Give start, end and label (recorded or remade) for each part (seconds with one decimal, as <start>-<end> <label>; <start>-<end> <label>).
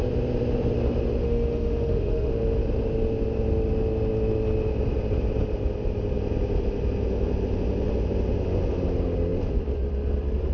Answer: 0.0-1.2 recorded; 1.2-2.3 remade; 2.3-10.5 recorded